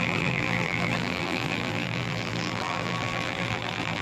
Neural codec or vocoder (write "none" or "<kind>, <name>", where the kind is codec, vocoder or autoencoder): vocoder, BigVGAN v2